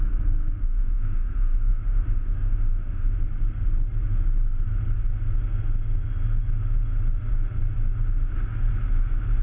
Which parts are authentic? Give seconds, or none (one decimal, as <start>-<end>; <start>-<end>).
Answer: 0.0-0.6; 3.2-9.4